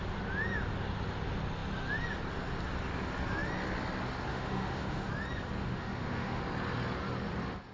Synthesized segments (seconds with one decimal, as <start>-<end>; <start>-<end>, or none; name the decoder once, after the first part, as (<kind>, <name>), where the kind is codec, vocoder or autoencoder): 4.3-5.1 (autoencoder, DAC-VAE); 5.6-6.4